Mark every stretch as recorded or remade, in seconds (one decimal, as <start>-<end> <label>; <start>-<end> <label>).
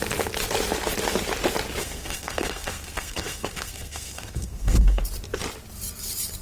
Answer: 0.0-1.8 recorded; 1.8-5.0 remade; 5.0-6.4 recorded